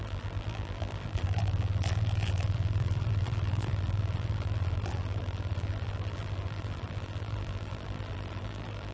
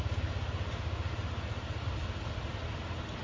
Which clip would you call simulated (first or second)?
first